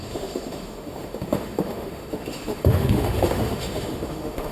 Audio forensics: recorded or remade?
remade